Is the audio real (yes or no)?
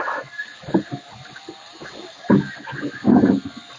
yes